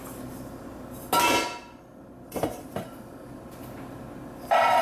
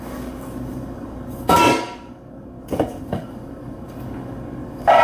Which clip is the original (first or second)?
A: first